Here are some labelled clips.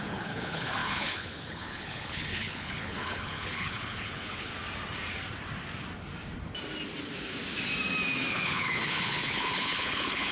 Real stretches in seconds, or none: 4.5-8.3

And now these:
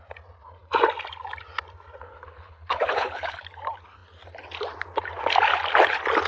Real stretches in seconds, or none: 0.0-2.0; 3.4-6.3

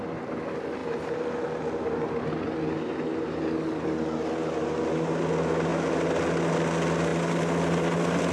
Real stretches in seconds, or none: 0.0-8.3

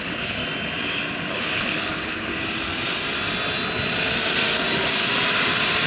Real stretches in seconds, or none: 0.4-1.3; 2.3-5.9

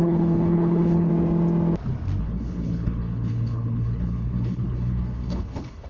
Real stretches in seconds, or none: 1.1-2.2

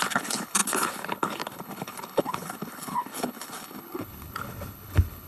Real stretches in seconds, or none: none

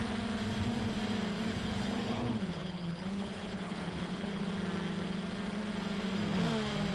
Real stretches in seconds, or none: 0.0-1.5; 4.5-6.9

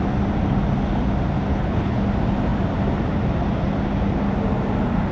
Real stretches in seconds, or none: 0.0-1.5; 2.0-5.1